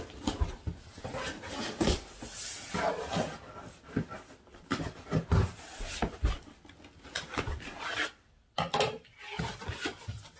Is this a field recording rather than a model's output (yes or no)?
yes